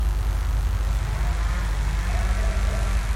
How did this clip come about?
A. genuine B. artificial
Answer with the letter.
A